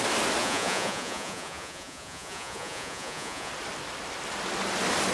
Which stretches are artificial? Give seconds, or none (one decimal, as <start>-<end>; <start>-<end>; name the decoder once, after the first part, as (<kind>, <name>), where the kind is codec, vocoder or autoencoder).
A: 0.4-3.5 (vocoder, Vocos)